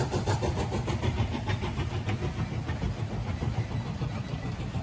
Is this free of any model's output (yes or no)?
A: yes